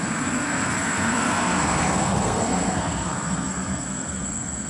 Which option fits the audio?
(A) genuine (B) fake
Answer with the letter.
B